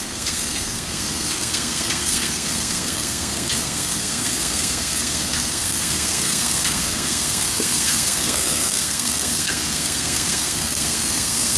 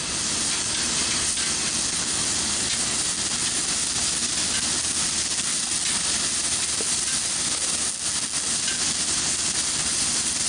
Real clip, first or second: second